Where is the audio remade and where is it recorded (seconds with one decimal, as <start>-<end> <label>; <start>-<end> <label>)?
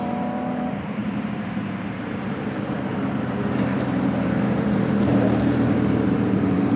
0.0-6.8 remade